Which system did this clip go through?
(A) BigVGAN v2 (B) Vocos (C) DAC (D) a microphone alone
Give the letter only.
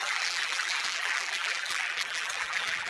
A